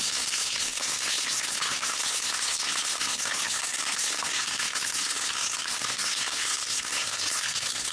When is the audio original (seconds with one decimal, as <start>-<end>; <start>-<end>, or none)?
none